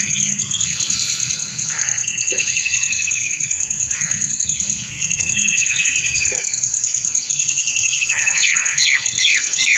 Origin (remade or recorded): remade